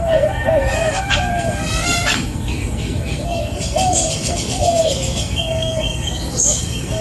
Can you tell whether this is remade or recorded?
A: remade